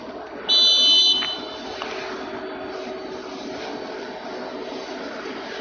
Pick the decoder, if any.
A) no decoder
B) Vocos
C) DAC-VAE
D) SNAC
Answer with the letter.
A